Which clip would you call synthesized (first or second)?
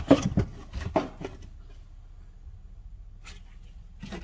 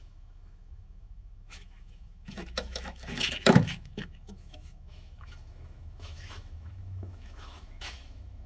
second